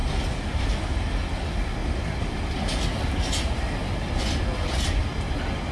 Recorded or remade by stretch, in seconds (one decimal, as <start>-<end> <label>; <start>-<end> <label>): 0.0-5.7 recorded

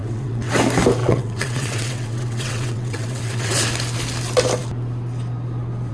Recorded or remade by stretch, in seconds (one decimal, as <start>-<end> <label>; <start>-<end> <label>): 0.0-0.5 remade; 0.5-1.0 recorded; 1.0-3.7 remade; 3.7-5.9 recorded